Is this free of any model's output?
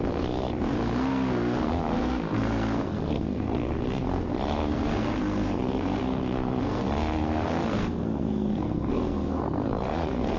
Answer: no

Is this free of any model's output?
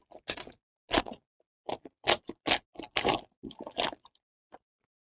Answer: yes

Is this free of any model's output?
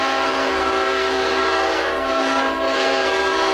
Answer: no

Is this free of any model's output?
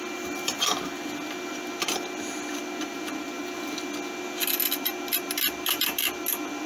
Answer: yes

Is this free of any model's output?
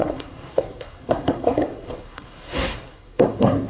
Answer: no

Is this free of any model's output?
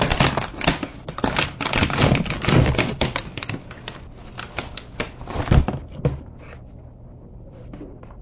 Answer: yes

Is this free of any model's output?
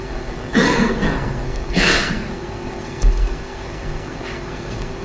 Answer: no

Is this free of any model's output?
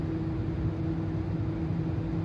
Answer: yes